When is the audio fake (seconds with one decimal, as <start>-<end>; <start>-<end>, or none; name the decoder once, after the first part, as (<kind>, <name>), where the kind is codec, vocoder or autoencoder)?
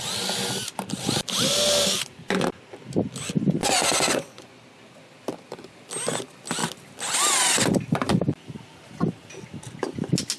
3.8-4.6 (vocoder, Vocos)